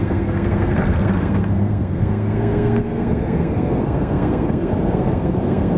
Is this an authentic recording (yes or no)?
no